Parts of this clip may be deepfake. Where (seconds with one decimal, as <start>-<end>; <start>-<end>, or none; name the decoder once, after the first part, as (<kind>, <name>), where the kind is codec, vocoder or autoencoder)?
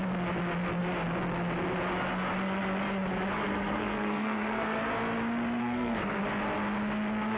3.5-4.8 (codec, SNAC); 5.6-6.2